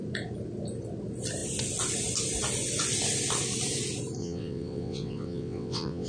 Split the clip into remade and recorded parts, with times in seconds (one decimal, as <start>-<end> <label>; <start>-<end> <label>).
0.0-4.2 recorded; 4.2-6.1 remade